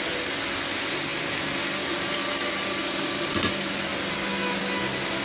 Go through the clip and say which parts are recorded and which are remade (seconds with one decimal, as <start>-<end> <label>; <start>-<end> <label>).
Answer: 0.0-5.2 recorded